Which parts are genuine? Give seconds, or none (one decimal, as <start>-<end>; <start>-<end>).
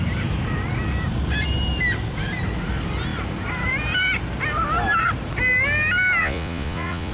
0.0-6.2